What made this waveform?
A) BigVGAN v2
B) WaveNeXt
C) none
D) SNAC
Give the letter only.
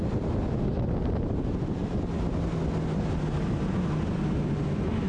C